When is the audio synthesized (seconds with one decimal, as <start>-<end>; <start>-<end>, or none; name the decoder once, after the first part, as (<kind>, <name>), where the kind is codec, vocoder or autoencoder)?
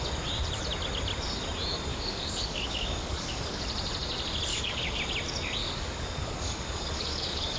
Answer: 1.9-3.6 (codec, DAC); 4.5-5.0; 5.6-7.6